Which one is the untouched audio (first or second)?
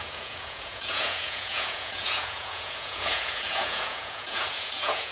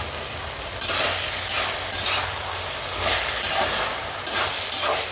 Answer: second